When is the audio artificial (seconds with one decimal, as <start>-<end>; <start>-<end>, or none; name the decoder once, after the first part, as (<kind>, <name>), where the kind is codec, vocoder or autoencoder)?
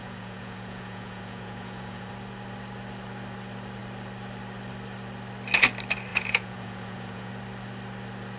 0.0-2.1 (vocoder, Vocos); 6.1-7.3